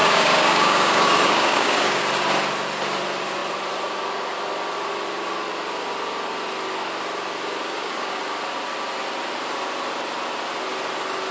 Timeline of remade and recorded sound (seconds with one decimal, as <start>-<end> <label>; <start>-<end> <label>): 0.0-2.0 remade; 2.0-7.6 recorded; 7.6-8.2 remade; 8.2-11.3 recorded